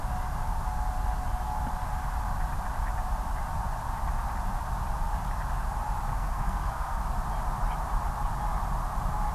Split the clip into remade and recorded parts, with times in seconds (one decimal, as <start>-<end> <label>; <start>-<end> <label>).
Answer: 0.0-6.1 recorded; 6.1-7.0 remade; 7.0-9.3 recorded